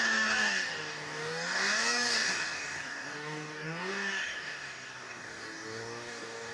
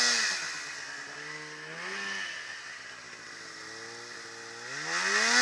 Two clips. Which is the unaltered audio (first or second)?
second